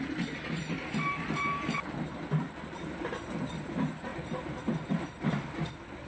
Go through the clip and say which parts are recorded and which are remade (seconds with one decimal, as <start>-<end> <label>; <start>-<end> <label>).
0.0-0.6 recorded; 0.6-3.2 remade; 3.2-6.1 recorded